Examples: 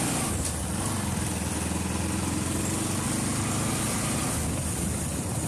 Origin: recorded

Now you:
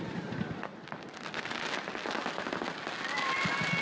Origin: recorded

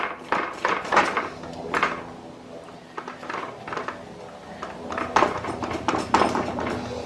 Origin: recorded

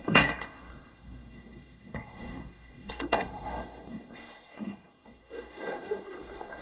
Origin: remade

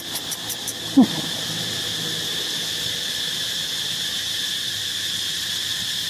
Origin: remade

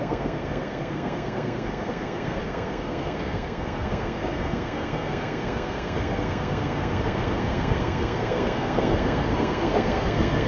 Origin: remade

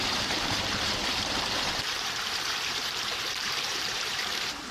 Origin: remade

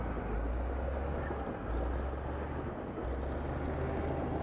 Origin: recorded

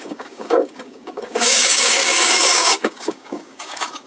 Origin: remade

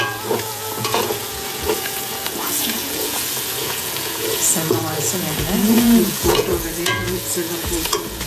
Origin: remade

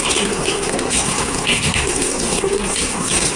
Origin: remade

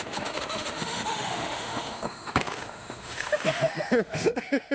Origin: remade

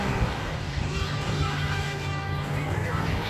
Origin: remade